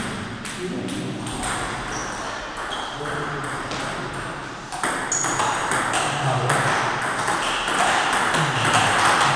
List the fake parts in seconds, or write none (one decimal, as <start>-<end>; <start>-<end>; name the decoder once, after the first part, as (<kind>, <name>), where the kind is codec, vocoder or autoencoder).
none